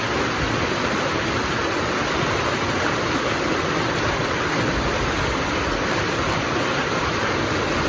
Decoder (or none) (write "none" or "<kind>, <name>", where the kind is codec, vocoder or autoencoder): none